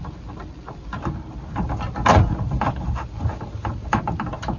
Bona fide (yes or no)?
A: yes